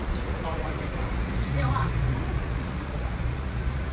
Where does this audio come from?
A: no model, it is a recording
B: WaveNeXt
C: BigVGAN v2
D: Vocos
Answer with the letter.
D